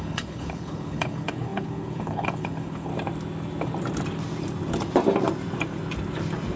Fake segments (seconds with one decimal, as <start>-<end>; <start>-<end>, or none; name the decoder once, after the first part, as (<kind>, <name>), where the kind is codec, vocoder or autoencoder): 0.0-2.9 (codec, HILCodec)